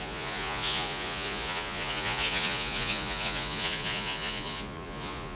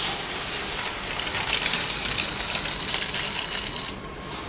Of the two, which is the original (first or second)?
second